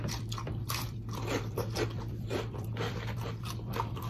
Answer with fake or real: fake